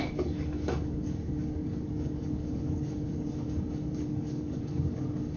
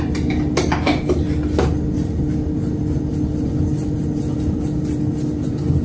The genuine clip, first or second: second